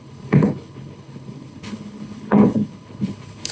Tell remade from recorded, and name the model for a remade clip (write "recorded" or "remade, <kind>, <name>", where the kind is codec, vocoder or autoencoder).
remade, codec, HILCodec